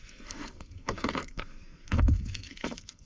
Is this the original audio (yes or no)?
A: no